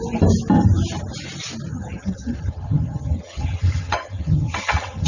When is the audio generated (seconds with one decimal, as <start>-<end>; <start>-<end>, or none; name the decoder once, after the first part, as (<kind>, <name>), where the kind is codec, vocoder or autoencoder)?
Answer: 1.7-5.1 (vocoder, HiFi-GAN)